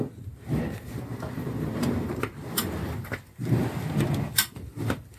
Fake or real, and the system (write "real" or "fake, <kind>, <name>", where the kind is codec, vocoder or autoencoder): fake, vocoder, BigVGAN v2